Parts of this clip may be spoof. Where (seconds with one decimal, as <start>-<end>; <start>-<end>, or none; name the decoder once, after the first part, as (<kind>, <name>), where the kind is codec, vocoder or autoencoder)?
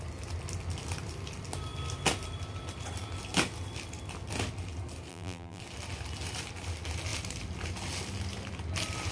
5.1-5.6 (vocoder, BigVGAN v2)